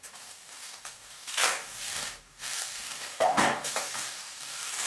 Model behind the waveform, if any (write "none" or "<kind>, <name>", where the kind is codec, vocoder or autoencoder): codec, DAC